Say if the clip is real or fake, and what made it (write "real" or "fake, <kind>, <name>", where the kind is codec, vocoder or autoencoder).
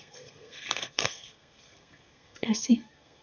fake, codec, SNAC